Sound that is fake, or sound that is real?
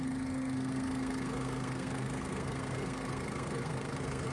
fake